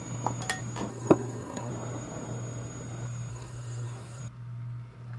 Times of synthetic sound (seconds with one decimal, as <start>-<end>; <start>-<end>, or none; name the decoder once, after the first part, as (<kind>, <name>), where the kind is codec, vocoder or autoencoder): 0.9-1.7 (codec, SNAC); 3.3-4.2